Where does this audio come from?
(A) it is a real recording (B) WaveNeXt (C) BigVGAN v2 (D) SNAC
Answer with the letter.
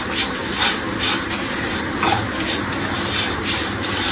C